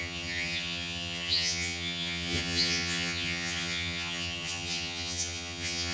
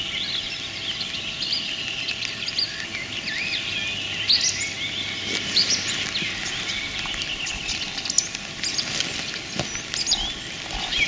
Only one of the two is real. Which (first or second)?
second